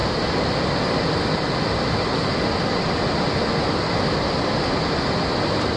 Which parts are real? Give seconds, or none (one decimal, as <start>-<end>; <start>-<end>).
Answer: 0.0-5.8